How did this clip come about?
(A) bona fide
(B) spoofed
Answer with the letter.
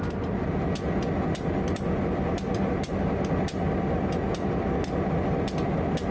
A